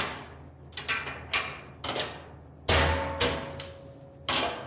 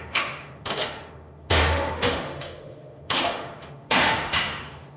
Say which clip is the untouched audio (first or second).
first